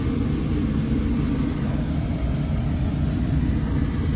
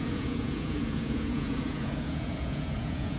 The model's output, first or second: second